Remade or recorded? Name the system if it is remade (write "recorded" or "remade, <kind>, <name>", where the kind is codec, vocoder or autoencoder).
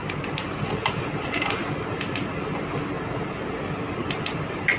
recorded